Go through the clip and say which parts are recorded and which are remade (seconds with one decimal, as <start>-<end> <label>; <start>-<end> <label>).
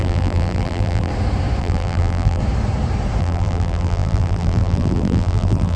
0.0-1.1 remade; 1.1-1.6 recorded; 1.6-2.4 remade; 2.4-3.2 recorded; 3.2-5.8 remade